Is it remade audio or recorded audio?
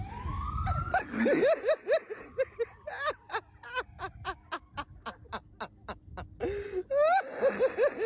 recorded